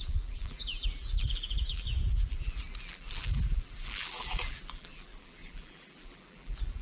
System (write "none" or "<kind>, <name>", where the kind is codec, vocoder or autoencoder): vocoder, BigVGAN v2